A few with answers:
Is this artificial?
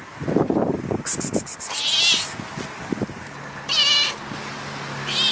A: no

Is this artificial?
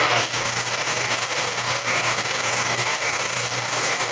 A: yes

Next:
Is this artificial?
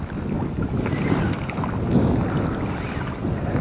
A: no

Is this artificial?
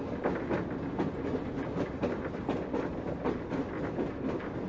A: no